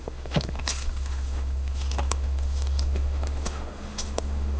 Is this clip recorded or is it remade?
remade